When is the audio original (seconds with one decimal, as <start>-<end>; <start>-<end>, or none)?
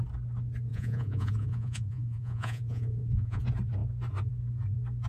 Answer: 0.0-0.7; 3.4-5.1